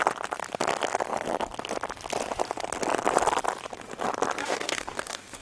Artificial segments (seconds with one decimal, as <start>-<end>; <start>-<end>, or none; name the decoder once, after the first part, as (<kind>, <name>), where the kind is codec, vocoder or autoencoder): 4.4-5.4 (codec, DAC)